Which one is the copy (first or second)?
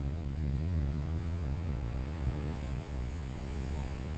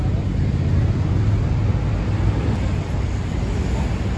first